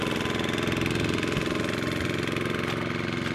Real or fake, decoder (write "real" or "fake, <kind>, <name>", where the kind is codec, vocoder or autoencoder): real